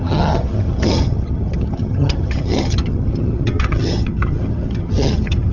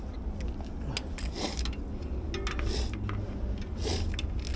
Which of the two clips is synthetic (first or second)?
first